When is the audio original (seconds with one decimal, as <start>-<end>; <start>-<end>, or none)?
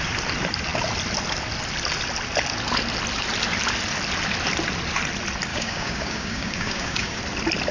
0.0-5.5; 7.2-7.7